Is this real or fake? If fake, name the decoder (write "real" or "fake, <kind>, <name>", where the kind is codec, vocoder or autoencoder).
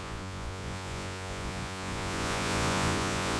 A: fake, vocoder, Vocos